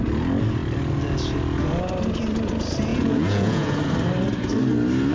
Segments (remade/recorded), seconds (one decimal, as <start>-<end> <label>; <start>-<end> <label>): 0.0-2.9 recorded; 2.9-3.8 remade; 3.8-5.1 recorded

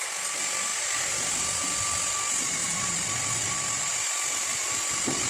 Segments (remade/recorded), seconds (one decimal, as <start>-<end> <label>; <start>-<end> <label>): 0.0-5.3 recorded